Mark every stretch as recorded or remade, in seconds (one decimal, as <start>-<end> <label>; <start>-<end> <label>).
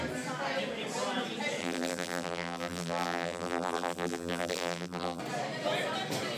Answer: 0.0-1.6 recorded; 1.6-5.2 remade; 5.2-6.4 recorded